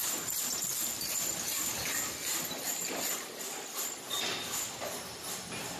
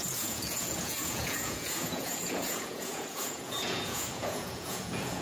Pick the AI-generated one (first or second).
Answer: second